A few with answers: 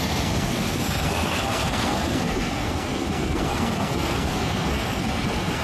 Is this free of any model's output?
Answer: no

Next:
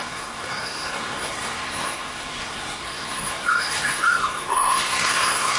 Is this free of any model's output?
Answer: no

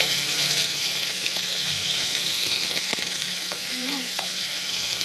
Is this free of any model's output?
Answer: no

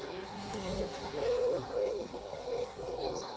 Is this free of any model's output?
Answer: no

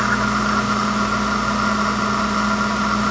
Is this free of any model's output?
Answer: yes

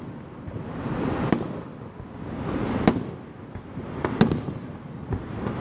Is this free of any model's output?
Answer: yes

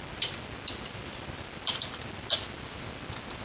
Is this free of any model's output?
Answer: yes